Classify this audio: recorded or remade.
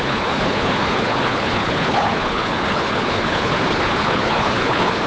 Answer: remade